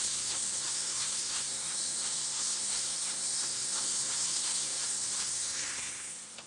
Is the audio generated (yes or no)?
yes